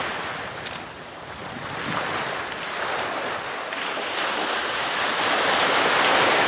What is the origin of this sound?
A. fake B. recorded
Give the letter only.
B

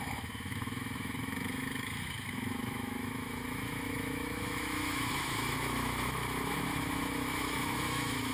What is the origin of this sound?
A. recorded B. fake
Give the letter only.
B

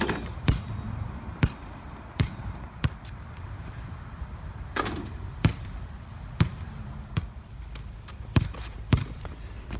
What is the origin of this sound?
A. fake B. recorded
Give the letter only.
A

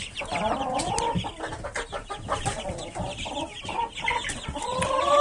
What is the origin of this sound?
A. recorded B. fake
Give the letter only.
A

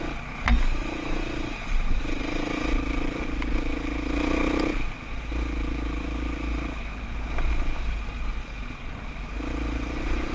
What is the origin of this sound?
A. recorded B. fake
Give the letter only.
A